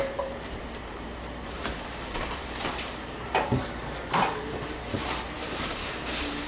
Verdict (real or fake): fake